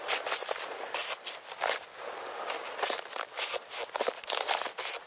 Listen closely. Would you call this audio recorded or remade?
recorded